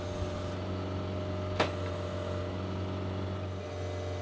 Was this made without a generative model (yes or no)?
yes